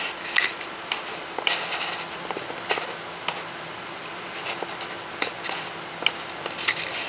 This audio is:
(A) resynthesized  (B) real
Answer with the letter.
B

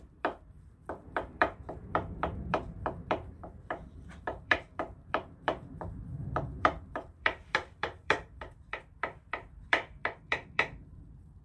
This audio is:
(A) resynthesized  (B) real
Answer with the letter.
A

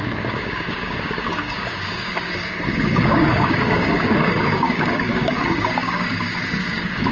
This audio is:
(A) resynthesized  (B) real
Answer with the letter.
A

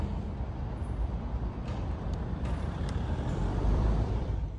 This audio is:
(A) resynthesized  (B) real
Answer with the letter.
A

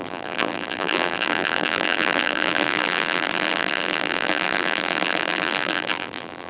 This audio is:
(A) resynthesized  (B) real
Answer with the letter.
A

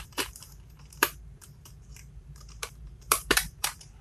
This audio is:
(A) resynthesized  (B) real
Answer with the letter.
A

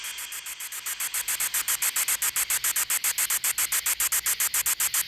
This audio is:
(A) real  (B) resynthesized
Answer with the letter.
A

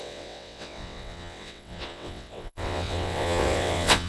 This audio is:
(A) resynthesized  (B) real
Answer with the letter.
A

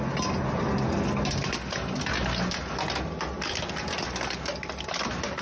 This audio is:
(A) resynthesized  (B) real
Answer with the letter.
B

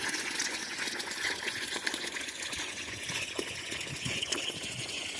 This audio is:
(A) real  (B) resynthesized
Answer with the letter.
B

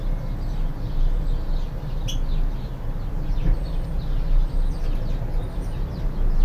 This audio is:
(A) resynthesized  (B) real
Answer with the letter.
B